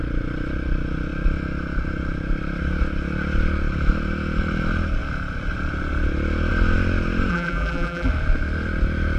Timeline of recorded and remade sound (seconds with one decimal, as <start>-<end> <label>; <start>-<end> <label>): 0.0-7.3 recorded; 7.3-8.1 remade; 8.1-9.2 recorded